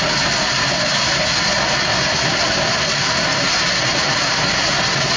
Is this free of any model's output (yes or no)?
yes